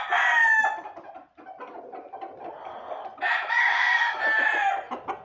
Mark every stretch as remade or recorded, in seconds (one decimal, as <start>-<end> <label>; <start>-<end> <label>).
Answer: 0.0-3.6 recorded; 3.6-4.2 remade; 4.2-5.2 recorded